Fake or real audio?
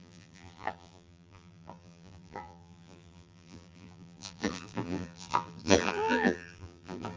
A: fake